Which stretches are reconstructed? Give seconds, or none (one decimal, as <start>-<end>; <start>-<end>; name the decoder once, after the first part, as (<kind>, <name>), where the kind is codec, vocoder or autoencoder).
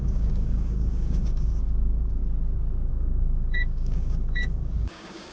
0.0-2.2 (codec, DAC); 2.9-5.3